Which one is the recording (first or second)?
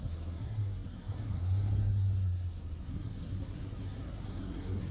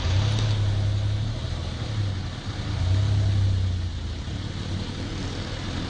second